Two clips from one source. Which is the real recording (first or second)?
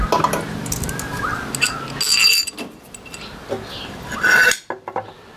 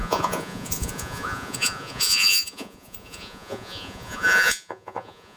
first